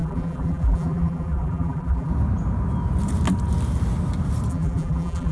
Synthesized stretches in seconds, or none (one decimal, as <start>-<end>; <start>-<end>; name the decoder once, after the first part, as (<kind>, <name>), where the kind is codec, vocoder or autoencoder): 0.0-2.1 (vocoder, BigVGAN v2); 4.5-5.3